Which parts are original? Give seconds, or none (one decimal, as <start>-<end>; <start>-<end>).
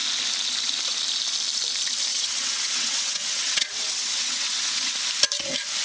0.0-2.1; 4.9-5.8